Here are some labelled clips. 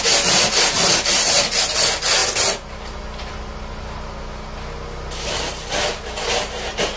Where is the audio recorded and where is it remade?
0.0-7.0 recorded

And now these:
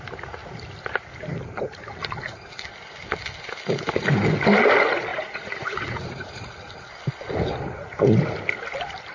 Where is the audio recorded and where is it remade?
0.0-5.1 recorded; 5.1-6.5 remade; 6.5-9.1 recorded

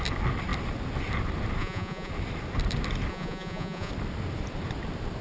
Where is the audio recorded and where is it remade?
0.0-1.6 recorded; 1.6-2.1 remade; 2.1-3.1 recorded; 3.1-3.9 remade; 3.9-5.2 recorded